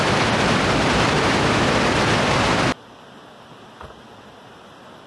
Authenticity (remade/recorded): recorded